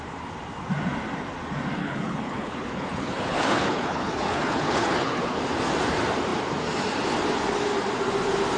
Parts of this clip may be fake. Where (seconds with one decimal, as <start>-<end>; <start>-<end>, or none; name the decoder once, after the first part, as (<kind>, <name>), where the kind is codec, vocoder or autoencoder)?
1.8-5.4 (codec, HILCodec)